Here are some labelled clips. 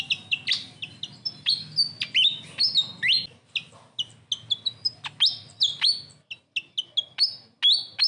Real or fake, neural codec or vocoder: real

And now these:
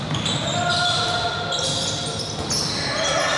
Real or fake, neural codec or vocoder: real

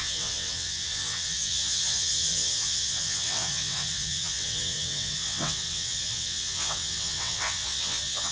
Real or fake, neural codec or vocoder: fake, vocoder, WaveNeXt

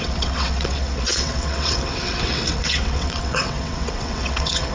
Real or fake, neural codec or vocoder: fake, vocoder, WaveNeXt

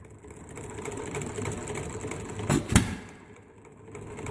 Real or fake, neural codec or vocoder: real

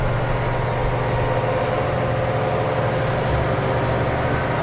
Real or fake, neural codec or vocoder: real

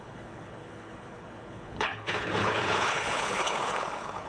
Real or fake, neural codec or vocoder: fake, codec, HILCodec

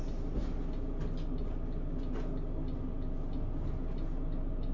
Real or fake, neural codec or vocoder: real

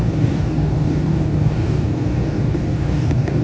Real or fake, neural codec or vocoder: fake, codec, DAC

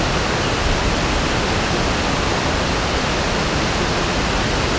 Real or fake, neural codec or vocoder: real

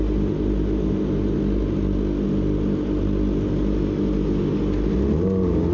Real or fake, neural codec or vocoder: real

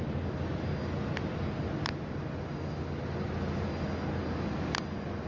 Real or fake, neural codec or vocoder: real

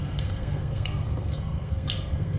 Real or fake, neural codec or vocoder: fake, codec, SNAC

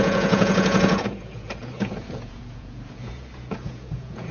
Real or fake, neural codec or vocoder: fake, vocoder, Vocos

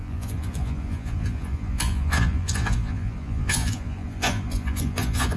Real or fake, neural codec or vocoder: fake, vocoder, Vocos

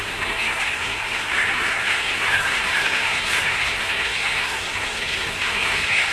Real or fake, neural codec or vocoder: fake, codec, SNAC